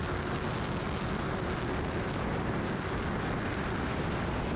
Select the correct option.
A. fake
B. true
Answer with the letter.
B